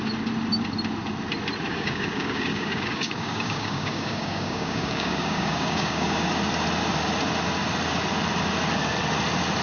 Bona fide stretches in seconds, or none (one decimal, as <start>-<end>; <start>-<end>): 0.0-1.7; 6.3-9.6